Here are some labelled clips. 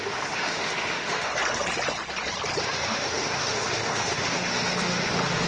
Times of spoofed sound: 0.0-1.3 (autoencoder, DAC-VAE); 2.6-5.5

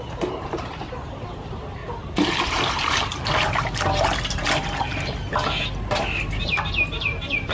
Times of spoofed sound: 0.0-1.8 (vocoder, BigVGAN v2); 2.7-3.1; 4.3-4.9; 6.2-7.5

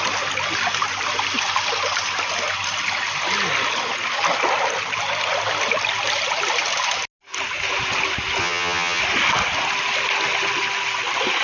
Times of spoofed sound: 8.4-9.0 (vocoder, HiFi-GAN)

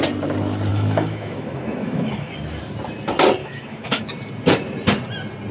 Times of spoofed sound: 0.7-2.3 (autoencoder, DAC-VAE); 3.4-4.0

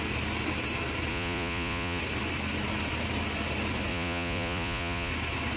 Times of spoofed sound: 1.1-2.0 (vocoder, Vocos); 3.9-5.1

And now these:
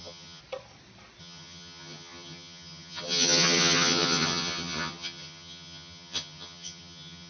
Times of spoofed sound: 0.0-0.4 (vocoder, HiFi-GAN); 1.2-7.3

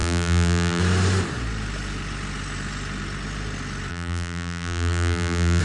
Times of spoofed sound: 0.0-0.8 (vocoder, BigVGAN v2); 3.9-5.6

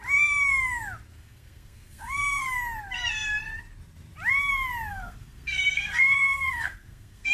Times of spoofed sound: 1.1-2.5 (codec, SNAC); 4.9-7.3